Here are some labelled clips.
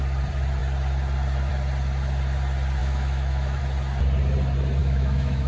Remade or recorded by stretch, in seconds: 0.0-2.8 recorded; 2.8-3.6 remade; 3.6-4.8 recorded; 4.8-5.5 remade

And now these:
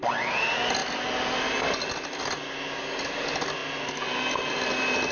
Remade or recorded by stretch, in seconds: 0.0-5.1 recorded

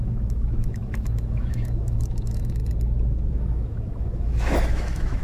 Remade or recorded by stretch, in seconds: 0.0-2.6 remade; 2.6-3.3 recorded; 3.3-5.2 remade

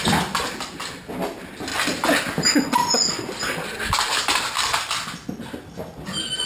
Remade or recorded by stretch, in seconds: 0.0-6.5 recorded

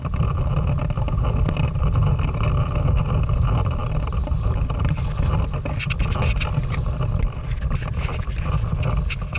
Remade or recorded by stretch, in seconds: 0.0-9.4 recorded

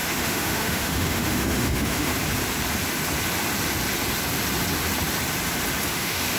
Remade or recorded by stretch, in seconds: 0.0-2.1 remade; 2.1-5.9 recorded; 5.9-6.4 remade

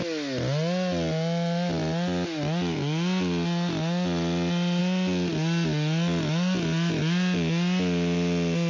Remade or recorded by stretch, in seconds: 0.0-8.7 recorded

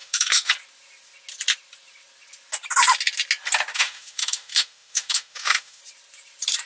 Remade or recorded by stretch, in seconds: 0.0-0.5 remade; 0.5-3.7 recorded; 3.7-5.8 remade; 5.8-6.7 recorded